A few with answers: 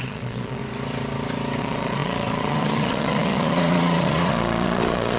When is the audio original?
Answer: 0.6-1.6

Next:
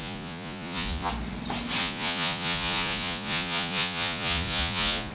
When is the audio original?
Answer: 1.1-1.8

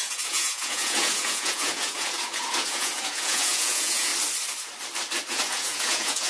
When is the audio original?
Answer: 4.1-5.3

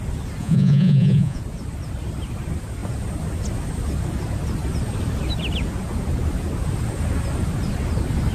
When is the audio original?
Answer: 0.0-0.4; 1.4-8.3